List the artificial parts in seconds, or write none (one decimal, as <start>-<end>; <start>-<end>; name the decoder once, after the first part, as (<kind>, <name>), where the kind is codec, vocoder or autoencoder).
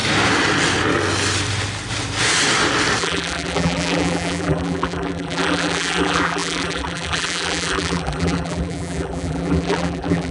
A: 3.0-10.3 (vocoder, BigVGAN v2)